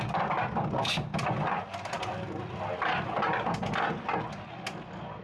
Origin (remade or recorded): recorded